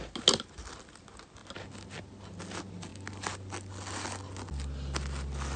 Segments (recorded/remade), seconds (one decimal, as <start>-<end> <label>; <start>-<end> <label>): 0.0-5.6 recorded

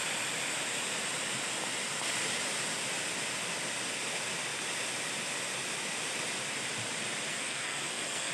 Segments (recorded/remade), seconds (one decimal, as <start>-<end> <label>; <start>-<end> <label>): 0.0-7.3 recorded; 7.3-8.3 remade

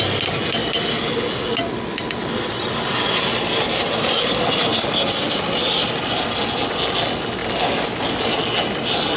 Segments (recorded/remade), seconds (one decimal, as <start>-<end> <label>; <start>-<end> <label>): 0.0-9.2 recorded